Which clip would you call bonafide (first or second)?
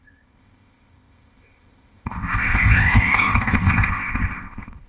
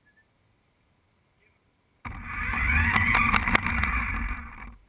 second